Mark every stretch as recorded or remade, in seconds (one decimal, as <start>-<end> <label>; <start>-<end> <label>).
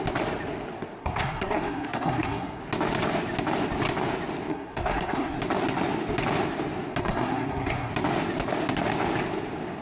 0.0-1.0 recorded; 1.0-2.6 remade; 2.6-4.5 recorded; 4.5-5.4 remade; 5.4-7.0 recorded; 7.0-7.9 remade; 7.9-9.8 recorded